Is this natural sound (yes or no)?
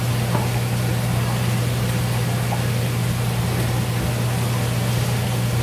yes